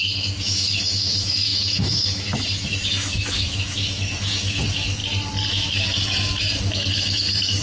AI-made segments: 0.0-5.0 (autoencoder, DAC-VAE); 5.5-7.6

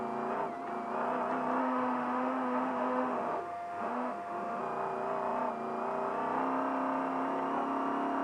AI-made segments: 1.6-4.6 (autoencoder, DAC-VAE)

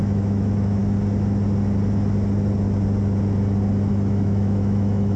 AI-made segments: 0.0-0.8 (autoencoder, DAC-VAE); 3.9-5.2

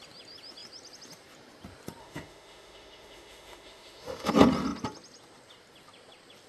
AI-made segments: 2.0-4.3 (autoencoder, DAC-VAE)